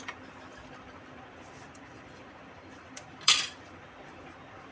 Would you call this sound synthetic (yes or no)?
yes